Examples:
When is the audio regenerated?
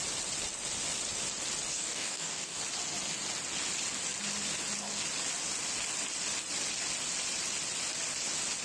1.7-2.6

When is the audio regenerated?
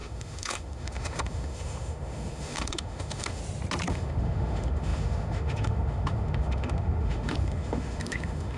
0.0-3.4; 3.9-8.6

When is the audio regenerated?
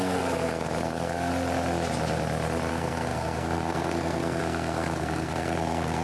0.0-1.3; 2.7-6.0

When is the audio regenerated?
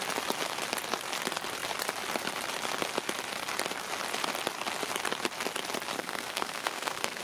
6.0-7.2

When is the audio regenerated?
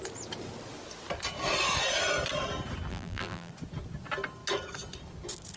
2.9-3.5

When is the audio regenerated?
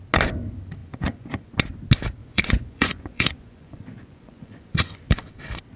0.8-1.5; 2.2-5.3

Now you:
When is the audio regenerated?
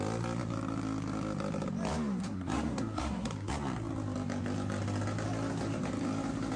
2.2-3.5